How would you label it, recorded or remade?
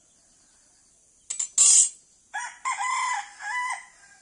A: recorded